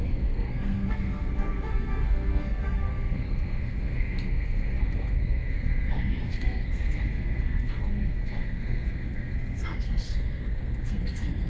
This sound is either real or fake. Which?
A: fake